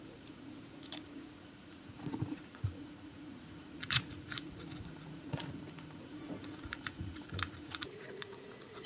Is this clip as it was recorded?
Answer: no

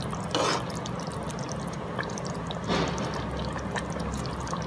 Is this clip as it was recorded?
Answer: yes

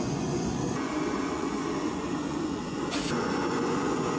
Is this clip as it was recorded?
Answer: no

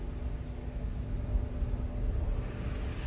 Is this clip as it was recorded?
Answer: yes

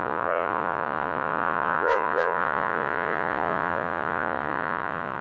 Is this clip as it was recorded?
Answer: no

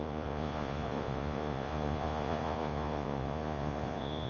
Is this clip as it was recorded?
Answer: no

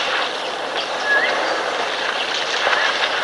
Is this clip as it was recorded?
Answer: yes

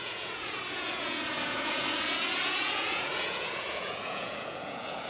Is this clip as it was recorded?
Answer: no